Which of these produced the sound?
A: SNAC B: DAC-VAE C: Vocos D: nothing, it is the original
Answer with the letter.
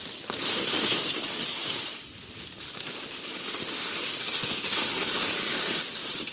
D